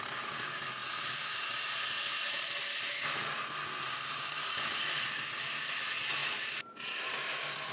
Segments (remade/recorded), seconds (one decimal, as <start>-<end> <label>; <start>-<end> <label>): 0.0-7.7 recorded